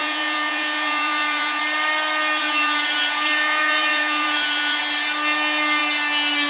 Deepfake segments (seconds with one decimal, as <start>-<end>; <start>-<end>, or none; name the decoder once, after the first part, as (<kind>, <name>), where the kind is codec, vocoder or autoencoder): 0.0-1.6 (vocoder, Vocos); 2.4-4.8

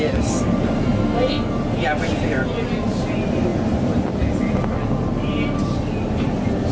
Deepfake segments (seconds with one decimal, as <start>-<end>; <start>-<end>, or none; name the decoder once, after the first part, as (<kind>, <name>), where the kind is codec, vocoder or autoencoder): 0.8-1.5 (codec, SNAC)

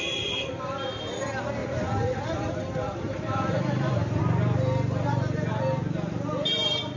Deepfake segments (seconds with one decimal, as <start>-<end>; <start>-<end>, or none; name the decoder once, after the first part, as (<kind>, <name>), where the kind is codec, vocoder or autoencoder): 1.6-4.2 (vocoder, BigVGAN v2)

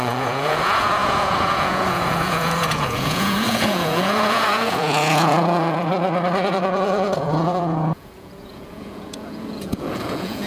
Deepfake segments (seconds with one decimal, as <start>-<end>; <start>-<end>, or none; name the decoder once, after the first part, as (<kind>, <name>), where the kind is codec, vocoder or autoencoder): 0.0-5.9 (vocoder, Vocos); 6.5-10.5